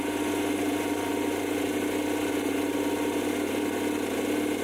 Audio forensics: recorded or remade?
recorded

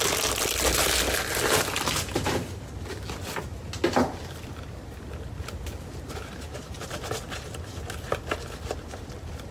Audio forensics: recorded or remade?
recorded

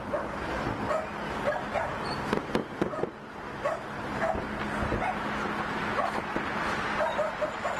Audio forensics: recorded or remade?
recorded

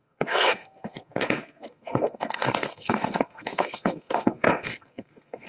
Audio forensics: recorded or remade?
remade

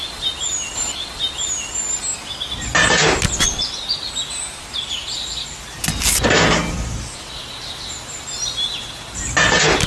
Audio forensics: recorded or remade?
recorded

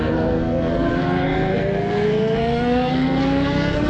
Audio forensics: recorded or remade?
remade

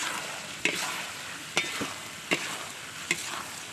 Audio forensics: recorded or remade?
recorded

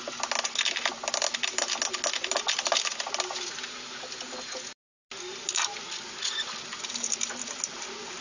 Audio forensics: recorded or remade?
recorded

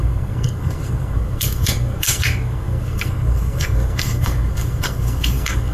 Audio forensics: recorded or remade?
remade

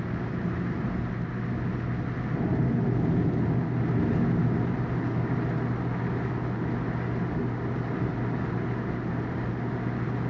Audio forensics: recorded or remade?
recorded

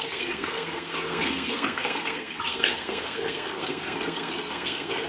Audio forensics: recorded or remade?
remade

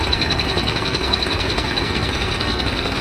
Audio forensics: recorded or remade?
remade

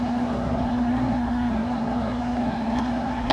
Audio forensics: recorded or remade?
remade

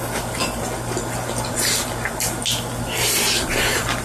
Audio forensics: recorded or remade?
recorded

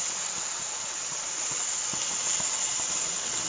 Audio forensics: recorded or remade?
recorded